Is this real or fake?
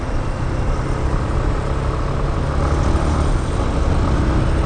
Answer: real